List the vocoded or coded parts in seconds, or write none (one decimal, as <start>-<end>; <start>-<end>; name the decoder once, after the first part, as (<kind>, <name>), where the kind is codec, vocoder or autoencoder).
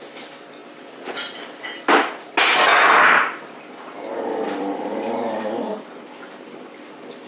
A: 0.6-1.6 (vocoder, BigVGAN v2); 2.7-3.2; 4.1-5.7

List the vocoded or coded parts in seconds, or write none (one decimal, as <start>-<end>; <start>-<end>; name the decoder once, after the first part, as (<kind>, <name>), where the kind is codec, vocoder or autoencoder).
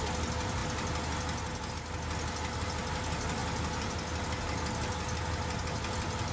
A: none